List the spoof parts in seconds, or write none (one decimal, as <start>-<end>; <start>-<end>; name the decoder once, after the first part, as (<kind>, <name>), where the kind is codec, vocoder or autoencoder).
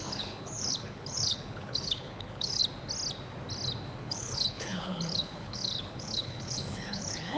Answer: 0.0-2.6 (codec, HILCodec); 4.0-7.4